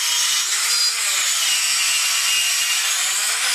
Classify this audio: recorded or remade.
recorded